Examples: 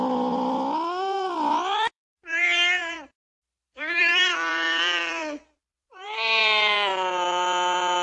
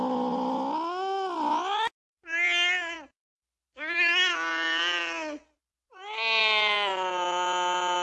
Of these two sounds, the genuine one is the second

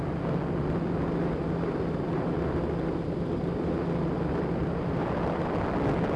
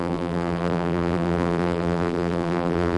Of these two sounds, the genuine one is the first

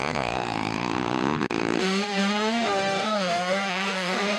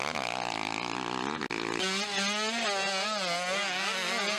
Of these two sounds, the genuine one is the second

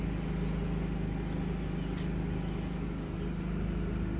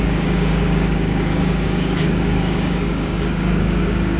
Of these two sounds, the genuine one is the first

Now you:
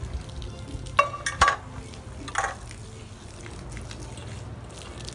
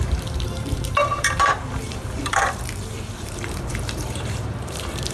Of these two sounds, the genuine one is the first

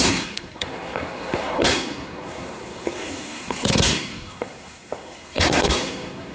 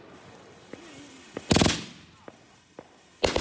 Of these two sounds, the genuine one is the second